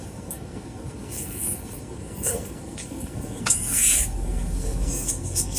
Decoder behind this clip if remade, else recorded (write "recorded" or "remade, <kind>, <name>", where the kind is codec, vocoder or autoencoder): remade, codec, SNAC